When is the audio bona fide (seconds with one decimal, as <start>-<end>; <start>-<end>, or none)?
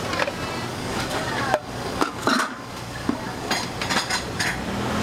0.0-0.7; 3.5-5.0